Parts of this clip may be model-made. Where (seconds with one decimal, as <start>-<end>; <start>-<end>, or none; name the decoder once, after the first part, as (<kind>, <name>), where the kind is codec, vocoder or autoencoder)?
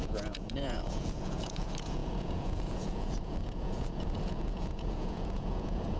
0.0-6.0 (vocoder, Vocos)